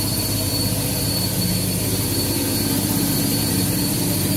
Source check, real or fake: fake